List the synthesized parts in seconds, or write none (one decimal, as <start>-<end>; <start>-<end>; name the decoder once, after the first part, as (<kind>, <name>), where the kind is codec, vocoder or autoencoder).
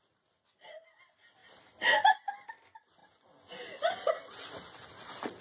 none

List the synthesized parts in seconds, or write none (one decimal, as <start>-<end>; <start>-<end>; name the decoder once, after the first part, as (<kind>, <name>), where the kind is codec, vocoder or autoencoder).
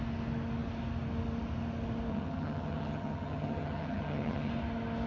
2.1-4.5 (vocoder, HiFi-GAN)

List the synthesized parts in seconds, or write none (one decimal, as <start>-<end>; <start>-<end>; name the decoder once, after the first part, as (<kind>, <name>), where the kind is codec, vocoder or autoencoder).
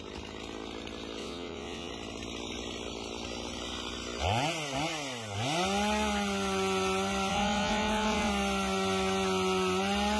1.2-1.9 (vocoder, WaveNeXt); 7.3-8.3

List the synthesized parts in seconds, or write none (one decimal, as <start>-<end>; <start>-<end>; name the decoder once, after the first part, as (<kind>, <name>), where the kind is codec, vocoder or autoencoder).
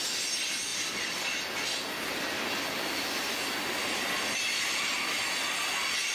none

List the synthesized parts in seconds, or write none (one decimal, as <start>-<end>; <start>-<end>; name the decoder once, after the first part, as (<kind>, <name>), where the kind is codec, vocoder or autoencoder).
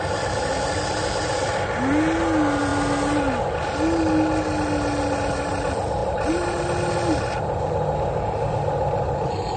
6.0-6.6 (vocoder, BigVGAN v2)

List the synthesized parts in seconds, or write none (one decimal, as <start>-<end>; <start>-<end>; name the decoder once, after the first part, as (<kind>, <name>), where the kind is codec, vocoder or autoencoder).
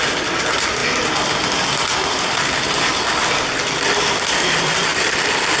0.0-0.8 (vocoder, BigVGAN v2); 4.2-5.6